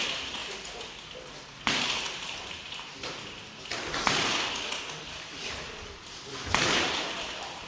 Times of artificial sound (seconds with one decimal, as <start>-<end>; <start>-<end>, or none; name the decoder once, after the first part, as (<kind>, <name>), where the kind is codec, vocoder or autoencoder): 0.0-0.4 (vocoder, BigVGAN v2); 1.7-2.9; 3.9-4.3; 5.0-7.7